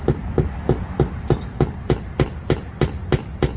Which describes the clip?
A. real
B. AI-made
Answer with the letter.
A